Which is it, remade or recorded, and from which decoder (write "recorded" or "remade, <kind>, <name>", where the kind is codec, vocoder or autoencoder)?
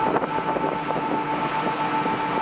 recorded